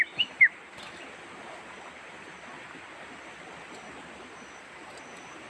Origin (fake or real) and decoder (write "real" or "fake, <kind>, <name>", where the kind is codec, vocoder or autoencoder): real